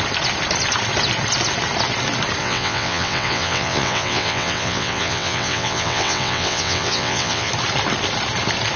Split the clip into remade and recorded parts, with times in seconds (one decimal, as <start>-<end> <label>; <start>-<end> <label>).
0.0-2.4 recorded; 2.4-7.5 remade; 7.5-8.8 recorded